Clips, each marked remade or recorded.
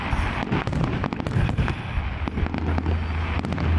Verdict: recorded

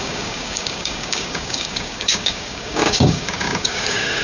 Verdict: remade